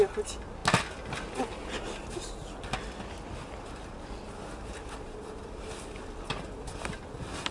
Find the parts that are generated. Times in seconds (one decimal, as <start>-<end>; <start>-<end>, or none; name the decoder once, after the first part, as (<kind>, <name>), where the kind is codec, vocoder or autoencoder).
none